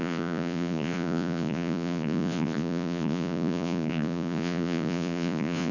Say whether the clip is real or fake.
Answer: fake